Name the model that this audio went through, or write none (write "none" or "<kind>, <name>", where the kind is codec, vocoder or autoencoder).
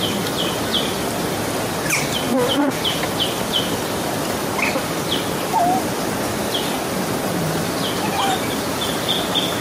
vocoder, BigVGAN v2